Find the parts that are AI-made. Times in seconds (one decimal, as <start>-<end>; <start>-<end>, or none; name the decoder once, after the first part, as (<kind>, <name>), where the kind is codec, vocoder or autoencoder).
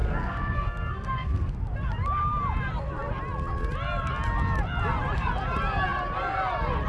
0.0-1.5 (codec, SNAC)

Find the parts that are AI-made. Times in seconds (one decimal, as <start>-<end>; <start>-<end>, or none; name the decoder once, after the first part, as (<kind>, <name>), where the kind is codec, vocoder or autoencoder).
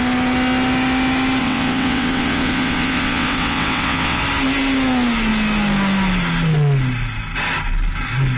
1.4-4.2 (vocoder, WaveNeXt)